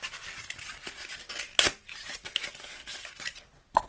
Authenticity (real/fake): real